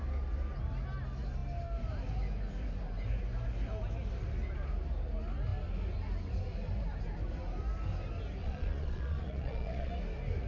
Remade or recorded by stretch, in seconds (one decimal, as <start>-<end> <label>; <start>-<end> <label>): 0.0-8.4 recorded; 8.4-9.9 remade; 9.9-10.5 recorded